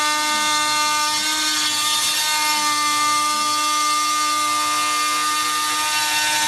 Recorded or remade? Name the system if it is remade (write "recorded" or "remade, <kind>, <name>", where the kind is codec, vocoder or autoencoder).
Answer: recorded